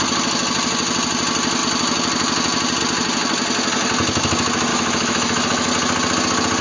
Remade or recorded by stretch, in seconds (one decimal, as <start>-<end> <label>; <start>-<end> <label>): 0.0-4.7 recorded; 4.7-5.7 remade; 5.7-6.6 recorded